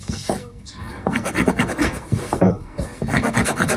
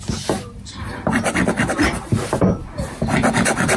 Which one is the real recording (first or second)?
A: second